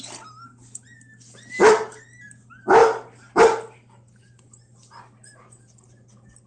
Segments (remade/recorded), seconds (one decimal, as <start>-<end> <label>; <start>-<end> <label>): 0.0-6.5 recorded